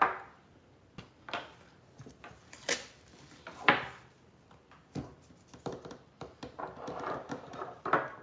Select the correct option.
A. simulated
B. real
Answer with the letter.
B